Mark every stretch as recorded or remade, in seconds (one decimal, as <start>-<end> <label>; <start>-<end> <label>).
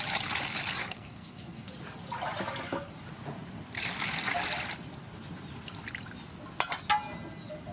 0.0-0.8 recorded; 0.8-1.7 remade; 1.7-7.7 recorded